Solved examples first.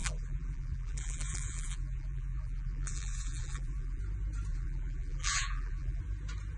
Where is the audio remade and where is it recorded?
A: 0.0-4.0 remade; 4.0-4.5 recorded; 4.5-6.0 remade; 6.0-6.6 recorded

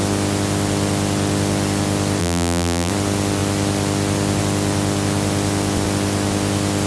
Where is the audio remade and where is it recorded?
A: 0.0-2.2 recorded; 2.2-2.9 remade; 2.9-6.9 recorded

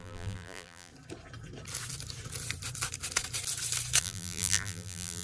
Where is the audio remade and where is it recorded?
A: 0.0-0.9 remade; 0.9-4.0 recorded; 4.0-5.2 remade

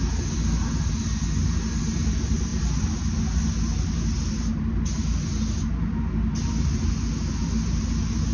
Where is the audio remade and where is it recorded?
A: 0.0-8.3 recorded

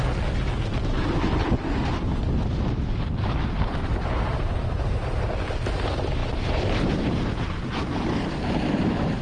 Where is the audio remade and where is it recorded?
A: 0.0-3.4 recorded; 3.4-5.3 remade; 5.3-6.2 recorded; 6.2-9.2 remade

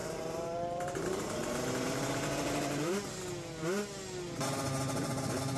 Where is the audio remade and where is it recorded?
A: 0.0-3.1 remade; 3.1-5.6 recorded